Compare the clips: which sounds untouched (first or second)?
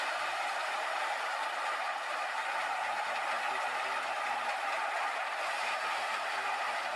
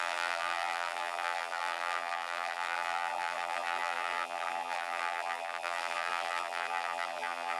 first